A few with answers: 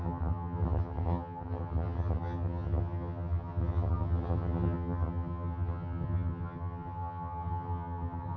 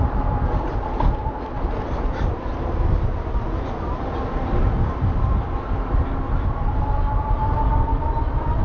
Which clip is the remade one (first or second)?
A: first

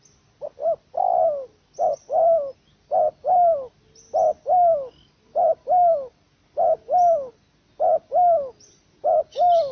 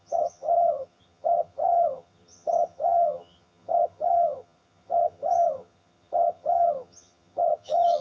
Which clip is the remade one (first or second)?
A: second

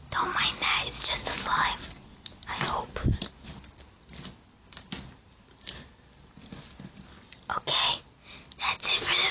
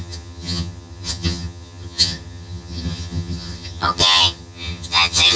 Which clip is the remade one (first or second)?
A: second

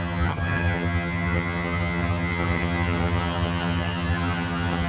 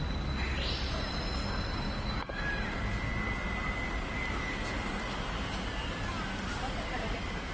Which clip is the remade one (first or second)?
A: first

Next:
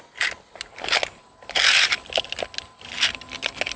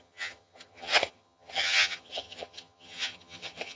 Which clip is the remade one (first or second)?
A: second